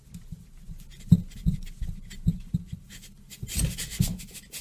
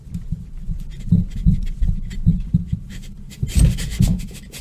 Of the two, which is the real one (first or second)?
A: first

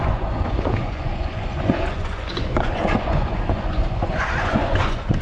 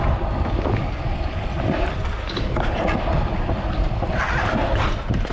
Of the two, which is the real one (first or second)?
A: second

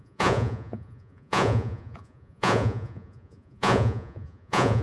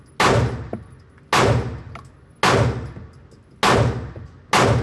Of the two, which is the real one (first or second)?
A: second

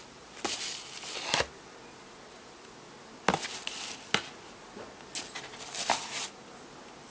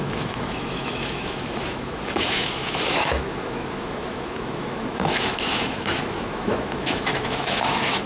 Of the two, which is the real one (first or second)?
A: first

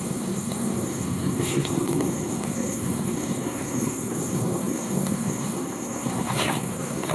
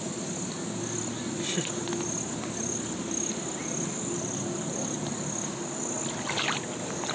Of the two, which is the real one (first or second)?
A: second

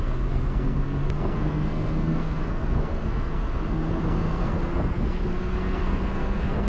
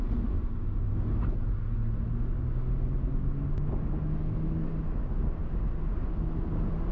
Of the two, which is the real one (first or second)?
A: second